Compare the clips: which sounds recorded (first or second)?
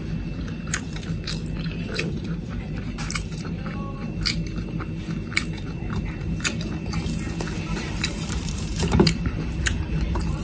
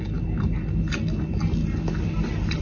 second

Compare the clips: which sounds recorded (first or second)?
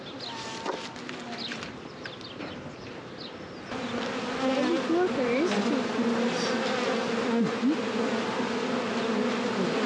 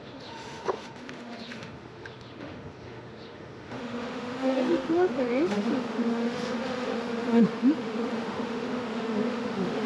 first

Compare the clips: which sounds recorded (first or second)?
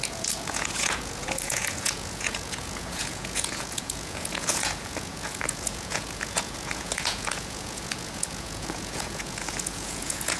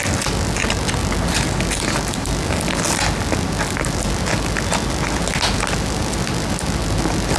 second